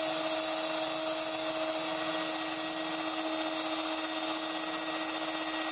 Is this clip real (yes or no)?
yes